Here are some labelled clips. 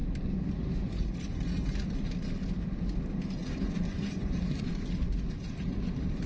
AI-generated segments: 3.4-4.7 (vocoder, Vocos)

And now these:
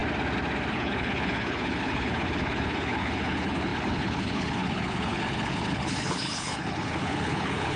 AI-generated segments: 0.7-7.8 (codec, HILCodec)

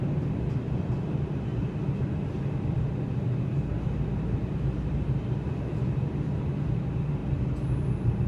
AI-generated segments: none